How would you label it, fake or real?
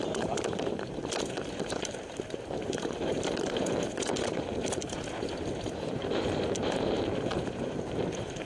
fake